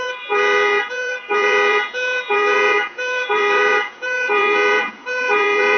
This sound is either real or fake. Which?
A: fake